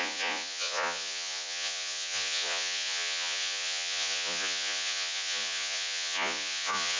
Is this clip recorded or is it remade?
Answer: remade